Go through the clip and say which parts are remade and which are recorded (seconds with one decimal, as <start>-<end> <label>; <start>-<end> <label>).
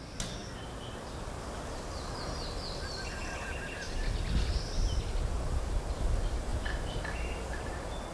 0.0-8.1 recorded